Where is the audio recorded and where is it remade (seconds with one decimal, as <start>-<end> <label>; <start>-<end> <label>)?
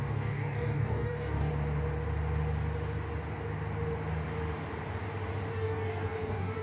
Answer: 0.0-1.5 remade; 1.5-5.5 recorded; 5.5-6.6 remade